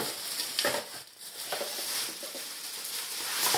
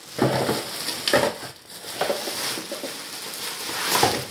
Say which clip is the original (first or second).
second